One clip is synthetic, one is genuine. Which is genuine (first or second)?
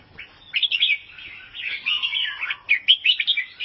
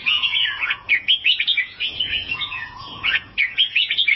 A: first